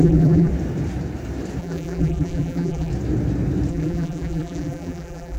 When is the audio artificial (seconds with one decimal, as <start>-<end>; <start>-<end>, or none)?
0.0-0.5; 1.6-2.9; 3.7-5.4